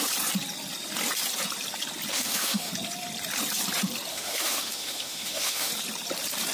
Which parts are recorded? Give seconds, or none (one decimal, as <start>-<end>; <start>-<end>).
0.0-2.1; 2.7-4.1; 5.7-6.5